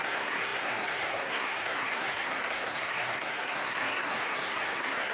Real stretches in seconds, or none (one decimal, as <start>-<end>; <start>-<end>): none